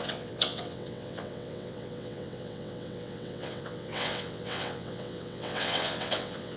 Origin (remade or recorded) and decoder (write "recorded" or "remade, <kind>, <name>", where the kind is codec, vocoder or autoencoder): remade, vocoder, WaveNeXt